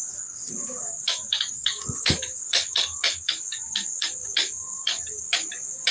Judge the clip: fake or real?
fake